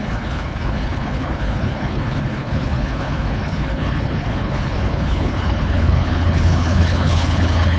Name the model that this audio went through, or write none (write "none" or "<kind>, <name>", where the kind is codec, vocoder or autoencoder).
codec, HILCodec